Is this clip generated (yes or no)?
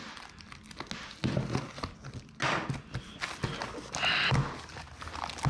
no